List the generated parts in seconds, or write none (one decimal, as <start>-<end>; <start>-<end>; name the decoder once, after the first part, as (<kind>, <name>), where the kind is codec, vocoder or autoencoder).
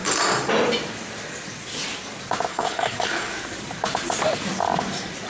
2.5-3.3 (codec, HILCodec)